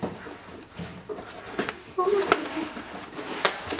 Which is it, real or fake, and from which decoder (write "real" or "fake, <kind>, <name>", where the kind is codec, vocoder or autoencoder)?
real